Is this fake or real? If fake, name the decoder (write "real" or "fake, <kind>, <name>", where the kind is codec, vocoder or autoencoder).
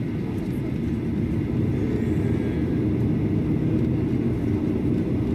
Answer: real